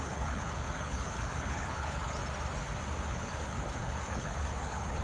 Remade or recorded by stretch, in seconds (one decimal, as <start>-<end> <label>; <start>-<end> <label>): 0.0-2.2 remade; 2.2-3.1 recorded; 3.1-5.0 remade